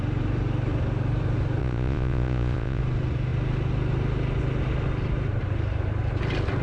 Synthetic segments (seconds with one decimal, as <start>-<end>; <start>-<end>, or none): 1.6-2.8